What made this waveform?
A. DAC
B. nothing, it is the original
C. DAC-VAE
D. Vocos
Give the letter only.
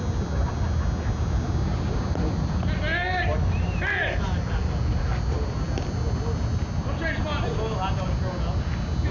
B